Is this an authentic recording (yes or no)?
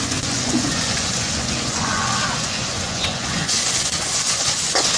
no